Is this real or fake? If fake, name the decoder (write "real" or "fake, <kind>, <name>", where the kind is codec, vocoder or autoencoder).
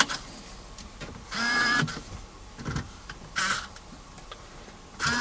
fake, vocoder, BigVGAN v2